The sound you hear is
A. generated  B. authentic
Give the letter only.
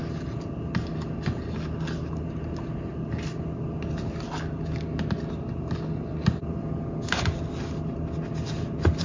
B